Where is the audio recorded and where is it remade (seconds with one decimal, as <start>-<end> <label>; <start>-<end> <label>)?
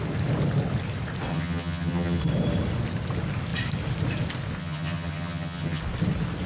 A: 0.0-1.3 recorded; 1.3-2.2 remade; 2.2-4.6 recorded; 4.6-5.8 remade; 5.8-6.5 recorded